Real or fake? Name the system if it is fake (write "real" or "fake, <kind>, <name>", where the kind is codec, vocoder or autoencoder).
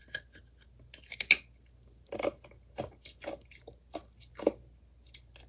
real